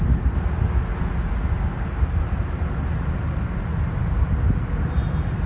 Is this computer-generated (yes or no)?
no